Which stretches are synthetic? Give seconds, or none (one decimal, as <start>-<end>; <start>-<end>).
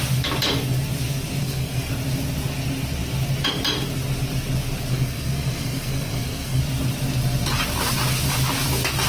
1.4-1.9; 4.9-6.6